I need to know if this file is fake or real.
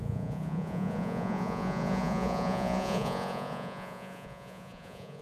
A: fake